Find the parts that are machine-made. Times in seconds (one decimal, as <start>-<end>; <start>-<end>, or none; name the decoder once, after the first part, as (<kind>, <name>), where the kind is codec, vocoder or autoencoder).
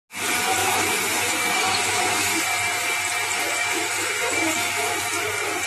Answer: 0.6-2.4 (autoencoder, DAC-VAE); 3.6-5.2